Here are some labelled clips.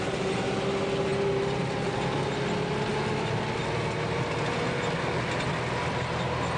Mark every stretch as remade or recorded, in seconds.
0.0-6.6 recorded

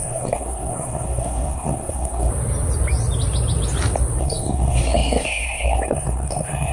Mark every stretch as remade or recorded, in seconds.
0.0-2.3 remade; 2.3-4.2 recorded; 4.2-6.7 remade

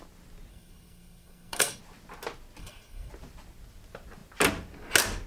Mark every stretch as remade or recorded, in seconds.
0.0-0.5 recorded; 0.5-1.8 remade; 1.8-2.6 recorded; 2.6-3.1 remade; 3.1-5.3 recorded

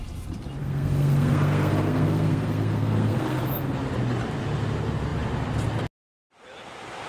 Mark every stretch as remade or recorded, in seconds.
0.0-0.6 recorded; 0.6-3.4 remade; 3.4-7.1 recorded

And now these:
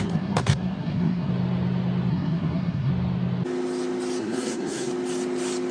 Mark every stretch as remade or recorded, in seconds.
0.0-1.3 remade; 1.3-2.1 recorded; 2.1-2.9 remade; 2.9-4.2 recorded; 4.2-4.9 remade; 4.9-5.7 recorded

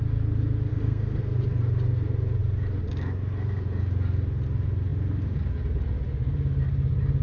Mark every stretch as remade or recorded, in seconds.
0.0-0.7 recorded; 0.7-1.2 remade; 1.2-7.2 recorded

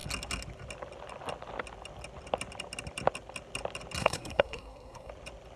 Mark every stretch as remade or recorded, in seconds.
0.0-4.0 recorded; 4.0-5.1 remade; 5.1-5.6 recorded